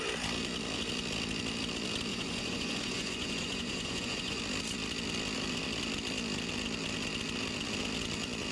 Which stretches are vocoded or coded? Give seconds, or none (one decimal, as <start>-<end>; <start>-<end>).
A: 2.1-4.4